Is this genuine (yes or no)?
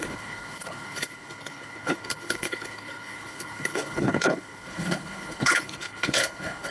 no